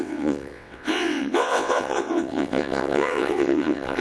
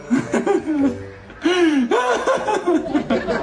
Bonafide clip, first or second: second